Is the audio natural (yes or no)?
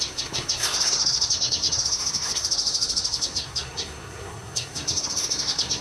no